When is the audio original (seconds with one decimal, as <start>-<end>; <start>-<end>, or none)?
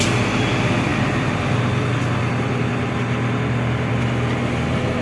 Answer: 0.0-5.0